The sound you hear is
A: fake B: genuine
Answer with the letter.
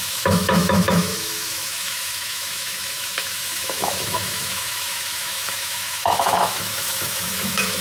A